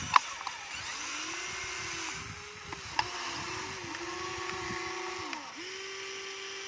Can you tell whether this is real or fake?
real